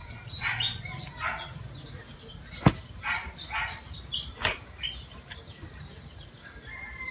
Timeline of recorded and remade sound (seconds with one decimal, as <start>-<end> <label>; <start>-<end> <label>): 0.0-7.1 recorded